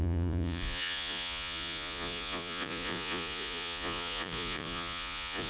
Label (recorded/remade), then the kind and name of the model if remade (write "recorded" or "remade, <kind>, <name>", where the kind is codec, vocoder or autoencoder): remade, vocoder, Vocos